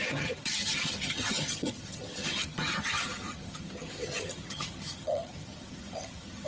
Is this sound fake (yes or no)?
yes